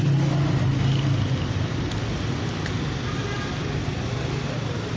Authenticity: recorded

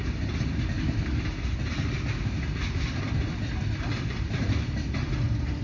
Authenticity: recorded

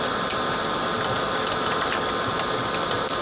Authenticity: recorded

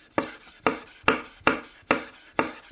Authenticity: recorded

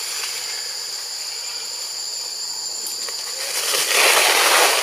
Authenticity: recorded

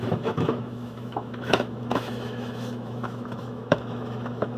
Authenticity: remade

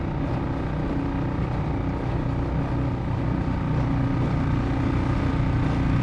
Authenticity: recorded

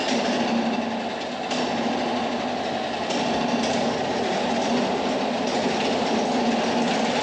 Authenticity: recorded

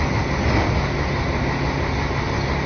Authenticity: recorded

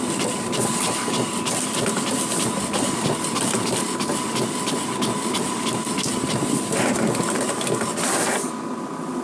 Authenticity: recorded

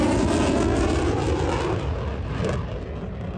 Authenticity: recorded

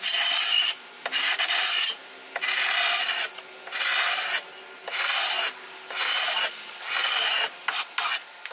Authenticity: recorded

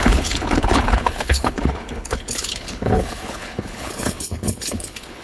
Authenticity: remade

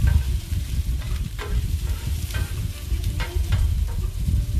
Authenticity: remade